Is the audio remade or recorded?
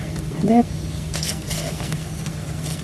remade